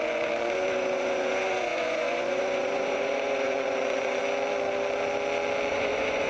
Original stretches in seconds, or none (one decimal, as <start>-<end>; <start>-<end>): 4.2-5.7